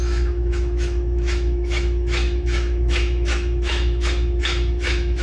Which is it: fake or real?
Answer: fake